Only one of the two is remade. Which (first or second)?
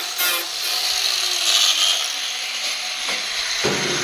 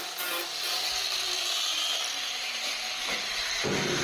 second